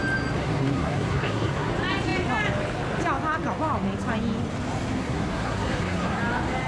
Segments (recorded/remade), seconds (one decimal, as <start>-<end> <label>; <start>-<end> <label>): 0.0-0.4 recorded; 0.4-1.7 remade; 1.7-5.0 recorded; 5.0-6.2 remade; 6.2-6.7 recorded